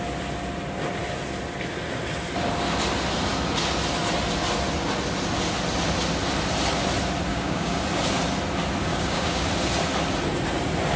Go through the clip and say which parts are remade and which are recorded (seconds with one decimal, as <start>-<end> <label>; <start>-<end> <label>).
0.0-7.3 recorded; 7.3-7.8 remade; 7.8-8.9 recorded; 8.9-9.5 remade; 9.5-11.0 recorded